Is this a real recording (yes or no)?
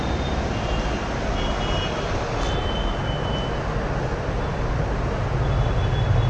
yes